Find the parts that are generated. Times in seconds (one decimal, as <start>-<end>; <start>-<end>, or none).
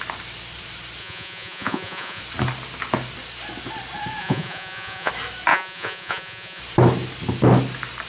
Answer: 1.0-2.2; 4.2-5.1; 5.5-6.6